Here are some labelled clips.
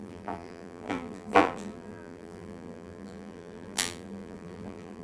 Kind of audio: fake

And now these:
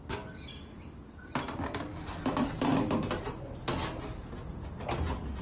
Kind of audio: real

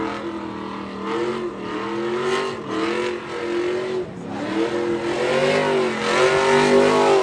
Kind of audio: real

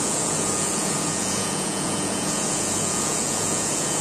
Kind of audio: fake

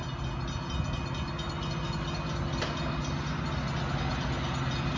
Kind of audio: real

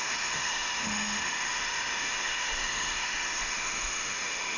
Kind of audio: fake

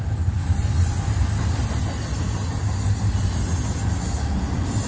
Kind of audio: real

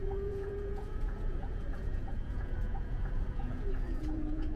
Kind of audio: fake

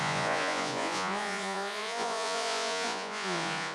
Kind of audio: fake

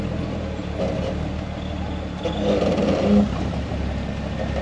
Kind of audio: real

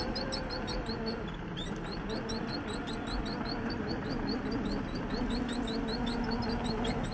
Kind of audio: real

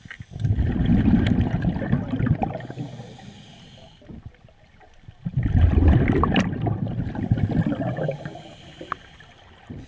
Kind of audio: real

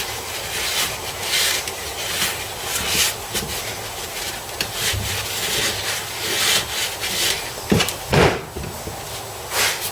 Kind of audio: real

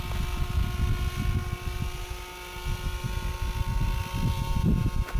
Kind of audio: real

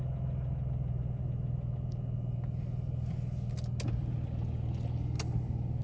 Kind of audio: real